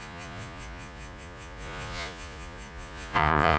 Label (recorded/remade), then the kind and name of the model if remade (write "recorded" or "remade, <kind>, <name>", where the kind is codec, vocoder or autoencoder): remade, vocoder, Vocos